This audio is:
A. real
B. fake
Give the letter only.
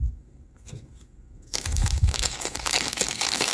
B